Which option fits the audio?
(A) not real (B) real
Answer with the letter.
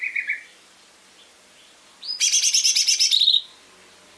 B